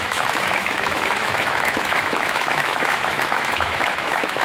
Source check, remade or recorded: remade